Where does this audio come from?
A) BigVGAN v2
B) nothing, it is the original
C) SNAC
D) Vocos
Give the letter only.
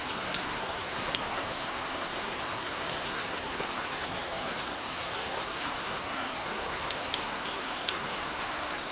C